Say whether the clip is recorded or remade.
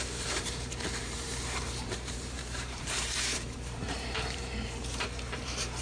remade